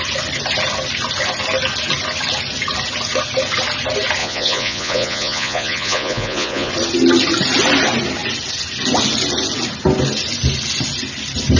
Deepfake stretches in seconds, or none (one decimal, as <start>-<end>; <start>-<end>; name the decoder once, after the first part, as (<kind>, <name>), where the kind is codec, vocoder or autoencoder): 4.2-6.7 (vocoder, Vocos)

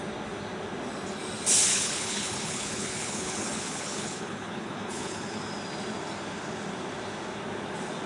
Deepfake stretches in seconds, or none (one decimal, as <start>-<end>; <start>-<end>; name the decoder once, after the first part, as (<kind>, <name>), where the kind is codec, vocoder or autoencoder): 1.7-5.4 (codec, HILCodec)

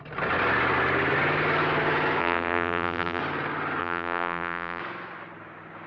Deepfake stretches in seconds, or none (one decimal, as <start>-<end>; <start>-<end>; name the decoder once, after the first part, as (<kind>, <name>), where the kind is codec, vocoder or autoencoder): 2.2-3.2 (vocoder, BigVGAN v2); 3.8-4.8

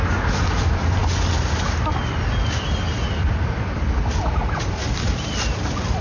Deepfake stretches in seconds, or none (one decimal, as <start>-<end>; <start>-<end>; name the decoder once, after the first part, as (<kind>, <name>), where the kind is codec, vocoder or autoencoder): none

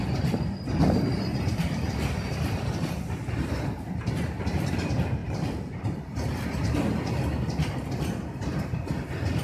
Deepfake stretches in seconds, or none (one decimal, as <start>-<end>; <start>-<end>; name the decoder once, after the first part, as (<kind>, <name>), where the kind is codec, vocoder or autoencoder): 1.3-4.4 (vocoder, BigVGAN v2); 5.2-6.0; 8.5-9.4

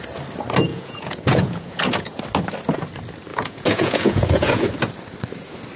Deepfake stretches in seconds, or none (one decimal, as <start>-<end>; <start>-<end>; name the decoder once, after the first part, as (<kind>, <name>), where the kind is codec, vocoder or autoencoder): 0.7-2.2 (vocoder, Vocos); 3.3-4.6

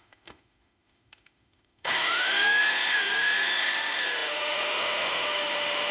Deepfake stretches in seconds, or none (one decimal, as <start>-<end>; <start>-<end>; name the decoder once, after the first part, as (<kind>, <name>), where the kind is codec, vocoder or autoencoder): 0.0-5.9 (autoencoder, DAC-VAE)